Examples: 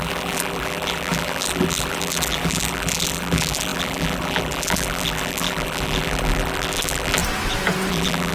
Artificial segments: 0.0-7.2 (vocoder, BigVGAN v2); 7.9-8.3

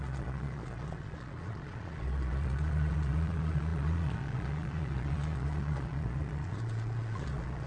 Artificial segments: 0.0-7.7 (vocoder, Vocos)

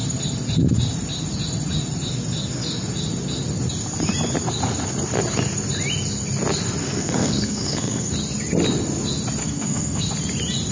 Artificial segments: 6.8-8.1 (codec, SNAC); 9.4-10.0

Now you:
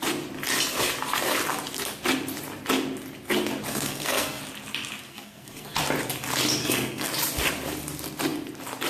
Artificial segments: 3.7-4.4 (codec, SNAC); 5.1-5.8; 6.6-7.1

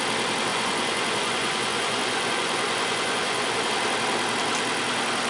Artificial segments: 0.5-3.7 (vocoder, Vocos)